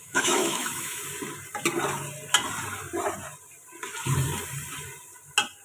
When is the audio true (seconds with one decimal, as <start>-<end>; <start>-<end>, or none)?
1.0-5.6